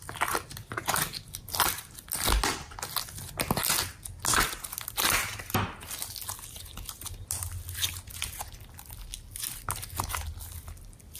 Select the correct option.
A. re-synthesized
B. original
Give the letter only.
B